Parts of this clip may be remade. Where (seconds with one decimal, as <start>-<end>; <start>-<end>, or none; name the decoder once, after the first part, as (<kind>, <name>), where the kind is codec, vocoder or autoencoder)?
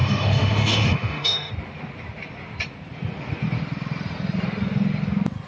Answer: 0.0-1.5 (autoencoder, DAC-VAE)